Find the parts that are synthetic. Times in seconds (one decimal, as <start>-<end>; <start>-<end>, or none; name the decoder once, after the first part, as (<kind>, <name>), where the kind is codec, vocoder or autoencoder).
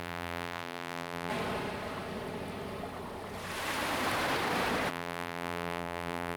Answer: 0.0-1.3 (vocoder, BigVGAN v2); 4.9-6.4